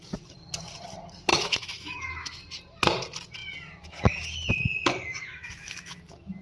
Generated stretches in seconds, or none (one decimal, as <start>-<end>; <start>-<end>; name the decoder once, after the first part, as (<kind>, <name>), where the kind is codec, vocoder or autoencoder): 1.3-2.4 (autoencoder, DAC-VAE); 5.2-6.4